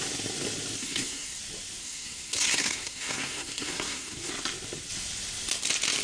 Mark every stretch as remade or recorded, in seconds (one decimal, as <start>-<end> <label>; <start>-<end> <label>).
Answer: 0.0-0.8 recorded; 0.8-1.4 remade; 1.4-1.8 recorded; 1.8-4.3 remade; 4.3-6.0 recorded